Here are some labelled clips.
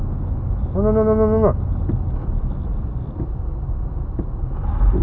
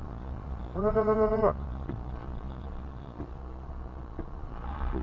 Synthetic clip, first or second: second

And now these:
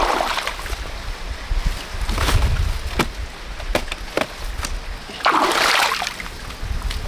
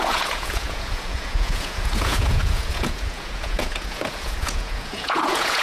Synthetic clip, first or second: second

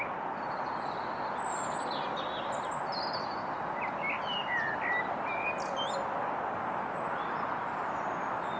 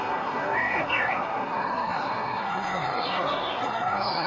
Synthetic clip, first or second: second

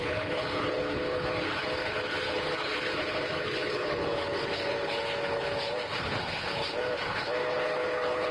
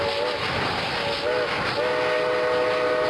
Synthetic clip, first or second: first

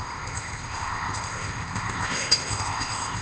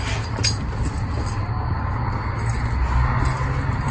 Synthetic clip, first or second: first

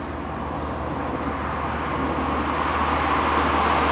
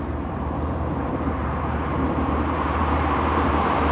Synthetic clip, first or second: second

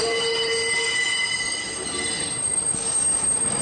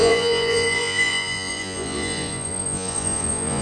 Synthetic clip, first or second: second